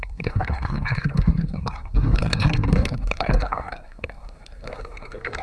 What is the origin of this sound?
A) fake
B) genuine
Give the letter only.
A